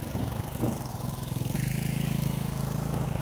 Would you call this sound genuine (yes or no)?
no